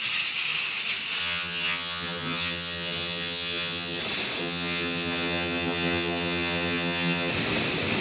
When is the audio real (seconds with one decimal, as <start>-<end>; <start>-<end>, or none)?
0.0-1.2; 4.0-4.4; 7.3-8.0